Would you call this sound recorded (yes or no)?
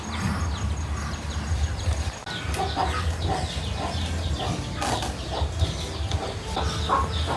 yes